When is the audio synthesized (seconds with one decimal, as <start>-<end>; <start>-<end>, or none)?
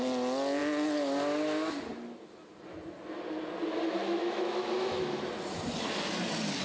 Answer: 4.0-5.2